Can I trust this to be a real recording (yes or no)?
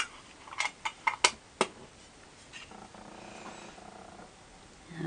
yes